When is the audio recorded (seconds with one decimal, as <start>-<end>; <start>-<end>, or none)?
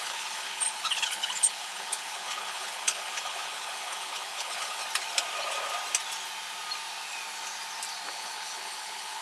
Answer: 4.8-8.1